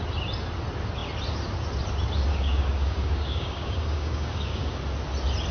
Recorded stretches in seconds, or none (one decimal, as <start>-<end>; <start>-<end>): 0.0-2.3; 4.8-5.5